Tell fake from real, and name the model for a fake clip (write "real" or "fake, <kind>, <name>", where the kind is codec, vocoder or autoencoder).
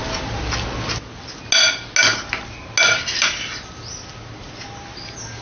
real